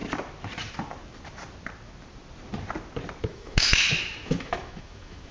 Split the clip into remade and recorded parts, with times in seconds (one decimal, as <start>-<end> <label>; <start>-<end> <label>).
0.0-3.2 recorded; 3.2-5.3 remade